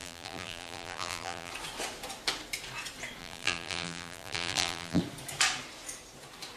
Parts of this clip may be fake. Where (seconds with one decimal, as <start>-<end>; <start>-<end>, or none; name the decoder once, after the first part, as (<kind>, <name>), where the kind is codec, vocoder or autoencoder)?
0.0-1.5 (vocoder, BigVGAN v2); 3.2-5.0